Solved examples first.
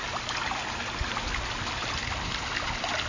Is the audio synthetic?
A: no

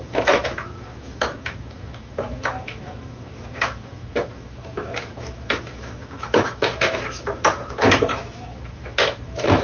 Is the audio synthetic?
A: yes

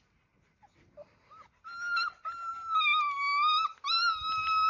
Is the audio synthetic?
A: no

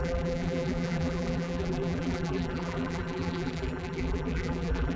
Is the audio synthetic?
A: yes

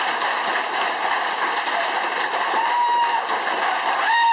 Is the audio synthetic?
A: no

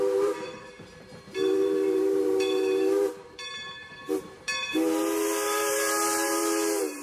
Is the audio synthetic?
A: yes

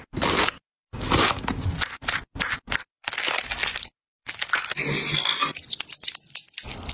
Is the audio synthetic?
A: no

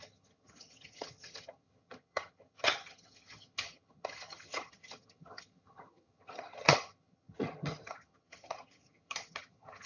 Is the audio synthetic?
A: yes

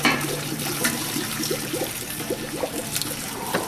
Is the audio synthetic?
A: yes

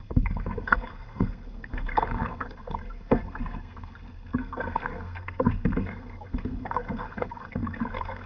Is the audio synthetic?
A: yes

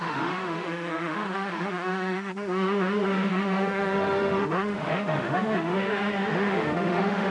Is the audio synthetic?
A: yes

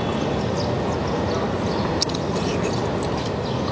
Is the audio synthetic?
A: no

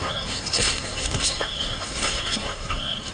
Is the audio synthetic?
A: yes